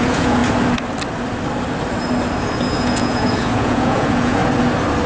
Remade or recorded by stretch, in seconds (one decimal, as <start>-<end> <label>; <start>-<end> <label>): 0.0-0.4 remade; 0.4-2.8 recorded; 2.8-4.4 remade; 4.4-5.1 recorded